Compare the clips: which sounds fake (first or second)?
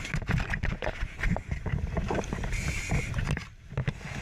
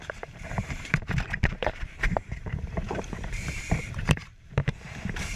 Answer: second